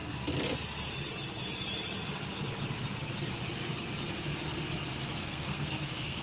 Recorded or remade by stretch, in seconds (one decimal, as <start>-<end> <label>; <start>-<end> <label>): 0.0-5.2 recorded; 5.2-6.2 remade